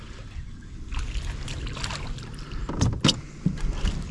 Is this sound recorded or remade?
recorded